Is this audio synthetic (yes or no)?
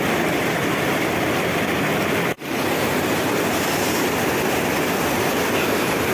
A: no